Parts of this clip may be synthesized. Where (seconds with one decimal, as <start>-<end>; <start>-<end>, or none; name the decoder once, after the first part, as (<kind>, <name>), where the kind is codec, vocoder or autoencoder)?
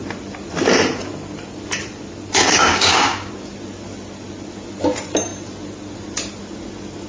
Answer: 2.4-3.3 (codec, DAC)